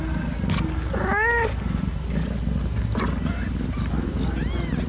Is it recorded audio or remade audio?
recorded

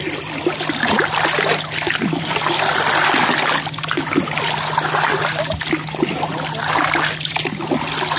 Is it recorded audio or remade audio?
recorded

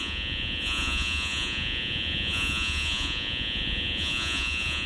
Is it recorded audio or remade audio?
remade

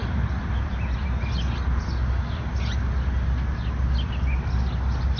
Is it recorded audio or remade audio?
recorded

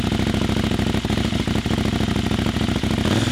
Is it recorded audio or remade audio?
recorded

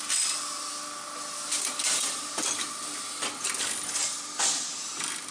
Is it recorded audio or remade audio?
recorded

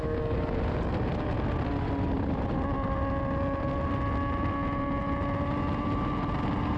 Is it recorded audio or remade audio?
recorded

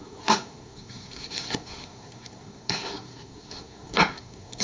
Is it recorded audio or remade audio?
remade